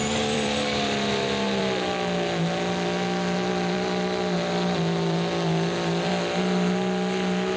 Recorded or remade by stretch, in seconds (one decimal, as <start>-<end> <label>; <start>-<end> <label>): 0.0-1.6 remade; 1.6-3.5 recorded; 3.5-7.6 remade